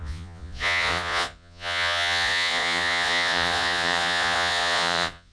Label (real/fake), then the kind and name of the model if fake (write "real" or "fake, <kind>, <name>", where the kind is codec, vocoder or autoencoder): fake, vocoder, Vocos